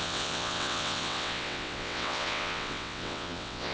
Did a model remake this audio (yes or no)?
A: yes